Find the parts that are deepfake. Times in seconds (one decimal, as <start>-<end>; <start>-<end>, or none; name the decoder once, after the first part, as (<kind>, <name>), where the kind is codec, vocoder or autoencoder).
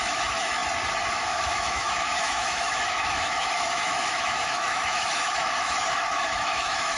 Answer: 0.0-0.6 (autoencoder, DAC-VAE); 1.1-7.0